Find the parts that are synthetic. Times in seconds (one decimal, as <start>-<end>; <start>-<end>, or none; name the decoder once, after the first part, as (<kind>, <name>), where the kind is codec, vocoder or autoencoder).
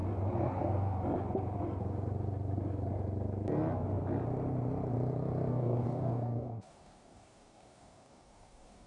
5.5-8.9 (codec, DAC)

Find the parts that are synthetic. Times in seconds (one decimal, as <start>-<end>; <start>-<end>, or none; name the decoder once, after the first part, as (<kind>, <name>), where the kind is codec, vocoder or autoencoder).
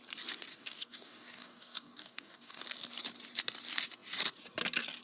0.5-2.6 (codec, DAC)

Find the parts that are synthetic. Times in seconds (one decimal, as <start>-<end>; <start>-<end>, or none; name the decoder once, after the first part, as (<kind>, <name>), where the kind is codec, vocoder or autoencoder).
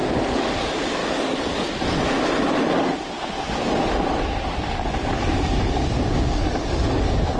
1.0-1.6 (codec, DAC); 5.0-7.0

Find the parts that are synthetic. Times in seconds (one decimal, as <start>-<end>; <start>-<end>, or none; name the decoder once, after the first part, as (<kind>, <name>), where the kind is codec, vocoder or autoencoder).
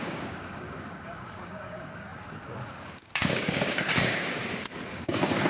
0.0-4.4 (codec, DAC); 4.9-5.5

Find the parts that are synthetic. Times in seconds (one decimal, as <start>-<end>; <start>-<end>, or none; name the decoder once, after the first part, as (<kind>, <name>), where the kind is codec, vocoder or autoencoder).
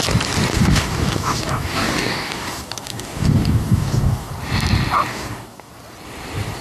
0.5-4.3 (codec, DAC); 5.1-5.7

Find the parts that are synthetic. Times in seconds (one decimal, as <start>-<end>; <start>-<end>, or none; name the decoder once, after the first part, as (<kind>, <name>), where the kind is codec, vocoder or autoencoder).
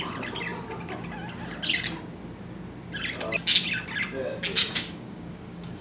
4.6-5.8 (codec, DAC)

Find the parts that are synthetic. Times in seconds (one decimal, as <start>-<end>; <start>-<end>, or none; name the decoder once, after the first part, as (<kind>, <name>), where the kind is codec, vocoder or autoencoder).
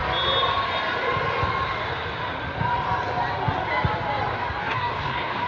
4.6-5.5 (codec, DAC)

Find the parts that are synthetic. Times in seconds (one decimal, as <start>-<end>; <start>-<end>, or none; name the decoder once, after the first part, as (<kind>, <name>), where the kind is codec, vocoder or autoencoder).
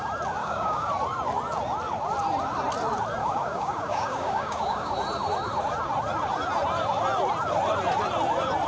0.4-0.9 (codec, DAC); 3.2-4.9